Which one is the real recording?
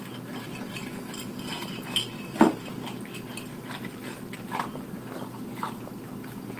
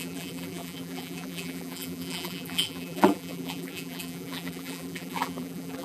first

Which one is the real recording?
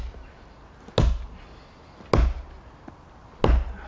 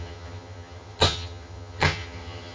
first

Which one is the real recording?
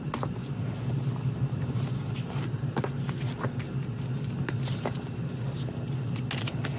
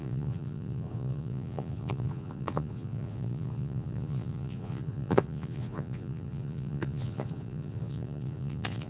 first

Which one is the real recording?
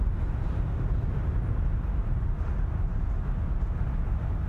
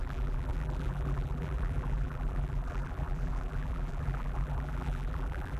first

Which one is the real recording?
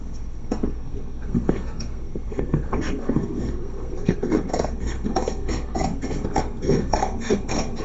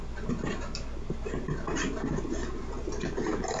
second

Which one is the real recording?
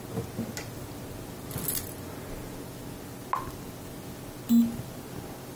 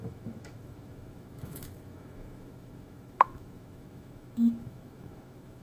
first